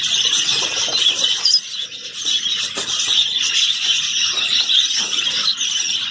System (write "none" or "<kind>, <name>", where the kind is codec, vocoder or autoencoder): none